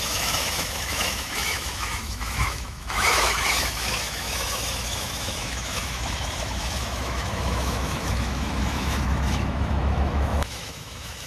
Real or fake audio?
fake